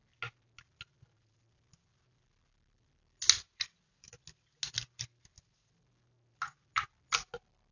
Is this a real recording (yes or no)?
yes